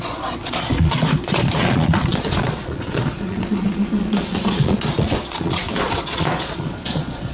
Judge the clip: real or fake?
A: fake